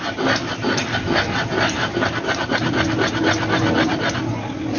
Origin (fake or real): real